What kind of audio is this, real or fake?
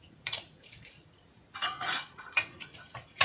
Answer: fake